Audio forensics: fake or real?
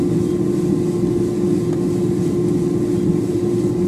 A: real